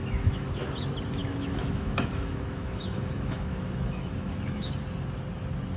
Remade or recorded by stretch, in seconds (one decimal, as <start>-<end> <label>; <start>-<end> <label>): 0.0-0.7 remade; 0.7-1.2 recorded; 1.2-4.7 remade; 4.7-5.8 recorded